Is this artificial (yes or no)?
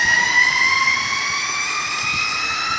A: no